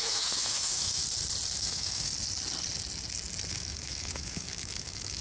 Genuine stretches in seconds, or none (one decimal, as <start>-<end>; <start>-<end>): 1.0-1.6; 2.1-3.5